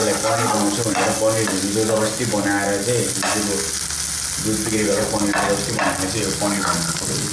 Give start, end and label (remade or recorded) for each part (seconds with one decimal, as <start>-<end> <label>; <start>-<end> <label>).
0.0-7.3 recorded